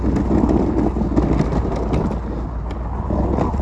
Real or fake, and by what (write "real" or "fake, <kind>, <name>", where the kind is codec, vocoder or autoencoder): real